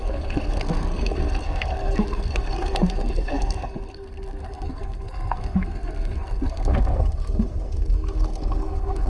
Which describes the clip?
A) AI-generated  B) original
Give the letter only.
A